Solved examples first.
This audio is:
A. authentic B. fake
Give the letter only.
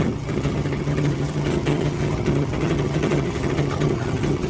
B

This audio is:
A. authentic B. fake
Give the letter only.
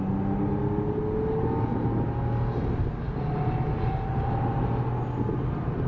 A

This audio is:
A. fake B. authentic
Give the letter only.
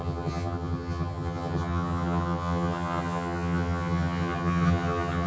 A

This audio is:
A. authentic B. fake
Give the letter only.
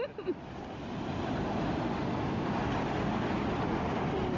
A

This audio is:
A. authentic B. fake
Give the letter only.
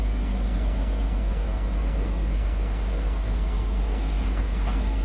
B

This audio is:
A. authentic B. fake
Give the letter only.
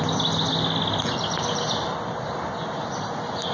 A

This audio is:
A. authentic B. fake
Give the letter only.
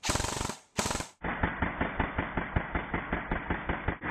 A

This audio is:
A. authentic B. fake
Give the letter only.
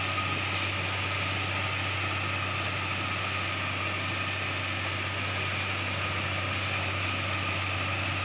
A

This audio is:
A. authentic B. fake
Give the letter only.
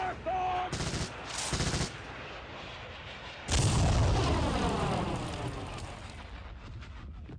A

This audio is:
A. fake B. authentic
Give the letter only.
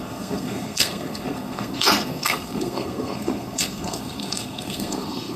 A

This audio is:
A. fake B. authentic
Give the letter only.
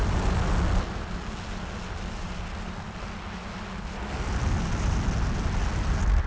B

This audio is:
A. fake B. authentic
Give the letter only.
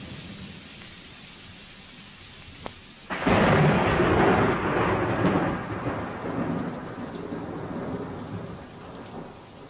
B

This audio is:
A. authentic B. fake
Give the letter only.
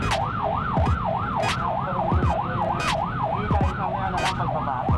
A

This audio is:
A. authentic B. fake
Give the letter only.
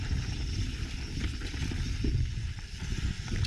A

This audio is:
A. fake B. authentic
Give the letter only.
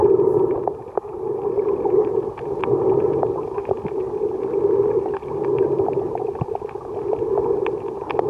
B